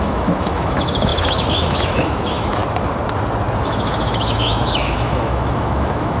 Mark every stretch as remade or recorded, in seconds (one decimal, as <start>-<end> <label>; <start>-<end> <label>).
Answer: 0.0-2.6 remade; 2.6-3.6 recorded; 3.6-6.2 remade